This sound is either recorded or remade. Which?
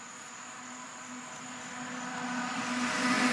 recorded